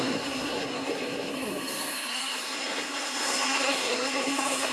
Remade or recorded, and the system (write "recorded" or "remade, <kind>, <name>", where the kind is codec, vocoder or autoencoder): remade, codec, SNAC